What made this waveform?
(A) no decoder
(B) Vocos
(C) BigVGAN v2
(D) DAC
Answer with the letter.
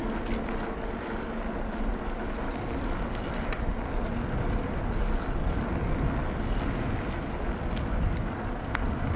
A